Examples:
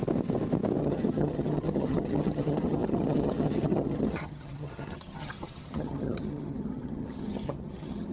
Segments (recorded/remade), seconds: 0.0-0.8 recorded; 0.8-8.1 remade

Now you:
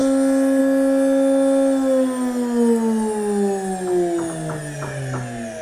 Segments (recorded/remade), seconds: 0.0-5.6 recorded

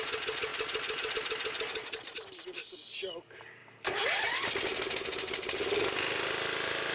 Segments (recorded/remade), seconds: 0.0-6.9 recorded